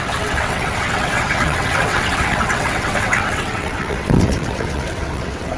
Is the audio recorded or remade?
remade